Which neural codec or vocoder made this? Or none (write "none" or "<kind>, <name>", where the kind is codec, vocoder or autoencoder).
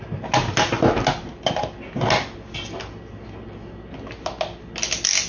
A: none